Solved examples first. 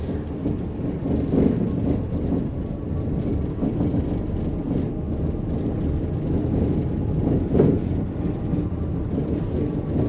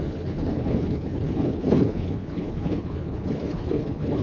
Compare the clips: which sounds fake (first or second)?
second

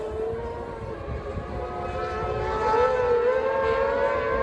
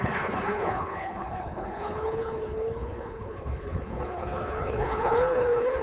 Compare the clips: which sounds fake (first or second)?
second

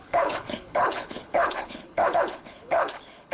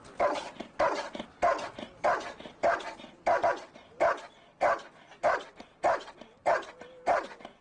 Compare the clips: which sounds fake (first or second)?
first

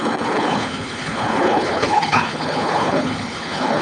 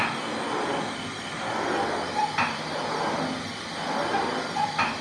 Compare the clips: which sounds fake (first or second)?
first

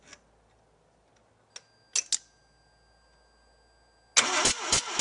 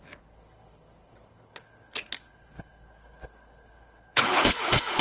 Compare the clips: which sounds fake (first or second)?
second